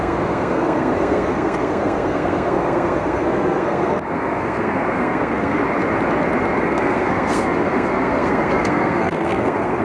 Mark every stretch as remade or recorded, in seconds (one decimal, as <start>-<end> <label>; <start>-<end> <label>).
0.0-5.6 remade; 5.6-6.6 recorded; 6.6-9.8 remade